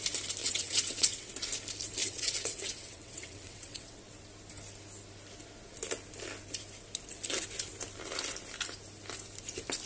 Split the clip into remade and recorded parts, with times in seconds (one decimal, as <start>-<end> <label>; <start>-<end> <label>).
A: 0.0-0.4 recorded; 0.4-1.3 remade; 1.3-2.0 recorded; 2.0-4.0 remade; 4.0-9.9 recorded